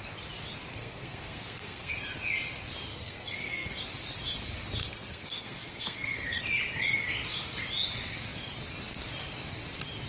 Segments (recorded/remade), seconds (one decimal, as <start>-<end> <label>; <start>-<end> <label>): 0.0-0.7 recorded; 0.7-1.9 remade; 1.9-2.9 recorded; 2.9-3.8 remade; 3.8-4.8 recorded; 4.8-6.4 remade; 6.4-10.1 recorded